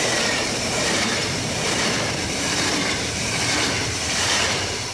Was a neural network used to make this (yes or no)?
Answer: yes